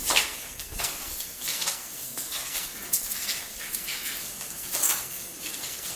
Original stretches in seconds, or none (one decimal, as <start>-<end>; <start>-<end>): none